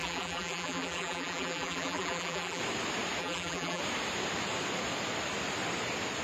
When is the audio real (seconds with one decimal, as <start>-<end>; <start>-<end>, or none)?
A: 2.6-3.2; 3.8-6.2